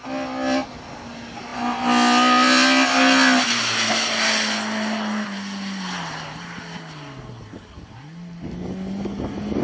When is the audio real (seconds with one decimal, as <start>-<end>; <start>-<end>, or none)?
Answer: 0.0-9.6